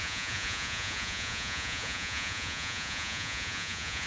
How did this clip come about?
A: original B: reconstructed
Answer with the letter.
B